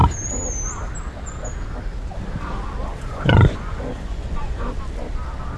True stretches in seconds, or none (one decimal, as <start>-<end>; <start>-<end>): 0.0-2.9; 4.7-5.6